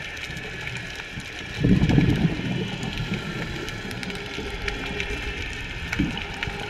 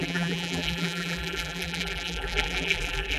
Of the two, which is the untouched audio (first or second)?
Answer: first